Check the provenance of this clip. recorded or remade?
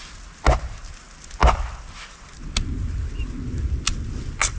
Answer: recorded